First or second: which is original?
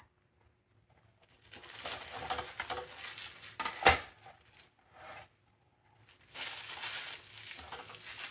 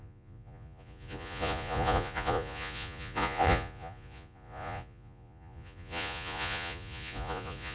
first